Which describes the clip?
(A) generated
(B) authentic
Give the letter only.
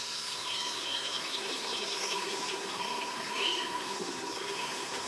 A